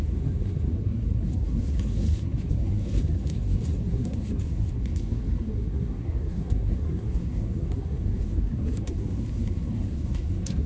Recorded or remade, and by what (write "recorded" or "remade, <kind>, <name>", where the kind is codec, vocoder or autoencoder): remade, codec, SNAC